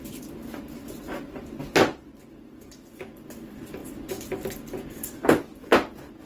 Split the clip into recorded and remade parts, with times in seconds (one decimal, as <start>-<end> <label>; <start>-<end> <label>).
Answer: 0.0-6.3 recorded